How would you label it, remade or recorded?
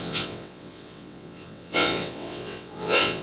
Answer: remade